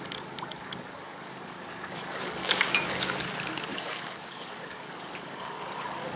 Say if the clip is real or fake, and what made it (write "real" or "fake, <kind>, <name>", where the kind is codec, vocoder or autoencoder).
fake, codec, DAC